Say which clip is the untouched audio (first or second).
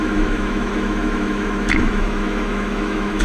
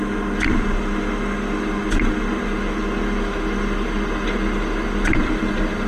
second